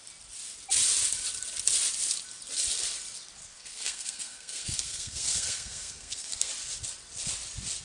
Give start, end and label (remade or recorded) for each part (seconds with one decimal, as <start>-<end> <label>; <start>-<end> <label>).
0.0-3.4 recorded; 3.4-6.5 remade; 6.5-7.8 recorded